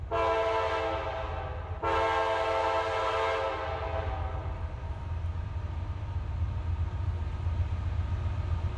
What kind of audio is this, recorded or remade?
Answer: recorded